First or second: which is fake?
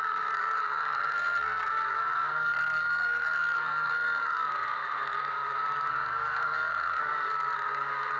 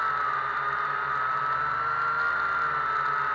first